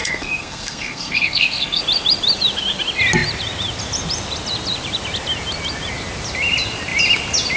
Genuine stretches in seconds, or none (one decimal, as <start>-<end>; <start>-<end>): 1.8-7.6